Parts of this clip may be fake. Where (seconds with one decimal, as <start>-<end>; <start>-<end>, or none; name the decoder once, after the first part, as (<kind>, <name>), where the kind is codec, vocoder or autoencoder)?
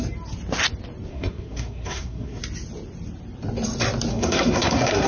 1.1-2.4 (codec, SNAC); 4.1-5.1